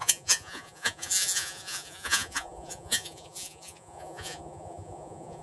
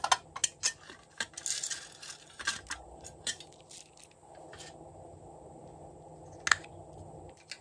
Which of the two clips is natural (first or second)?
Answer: second